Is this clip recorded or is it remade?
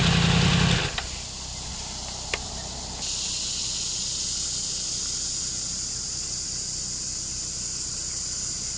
recorded